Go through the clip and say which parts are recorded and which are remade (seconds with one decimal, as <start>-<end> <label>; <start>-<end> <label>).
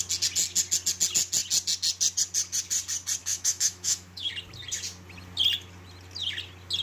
0.0-3.2 recorded; 3.2-4.3 remade; 4.3-6.8 recorded